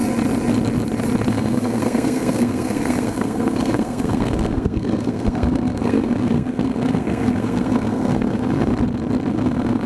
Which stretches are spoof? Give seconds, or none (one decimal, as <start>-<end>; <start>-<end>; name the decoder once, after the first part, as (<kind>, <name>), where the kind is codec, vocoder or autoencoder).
1.3-8.7 (codec, SNAC); 9.3-9.9